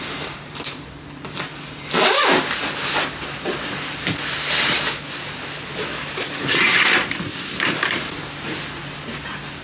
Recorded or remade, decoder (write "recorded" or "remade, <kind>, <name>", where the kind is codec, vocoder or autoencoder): recorded